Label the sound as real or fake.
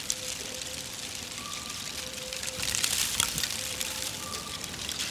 fake